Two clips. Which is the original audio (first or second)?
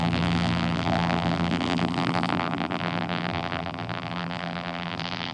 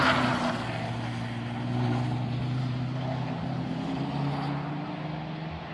second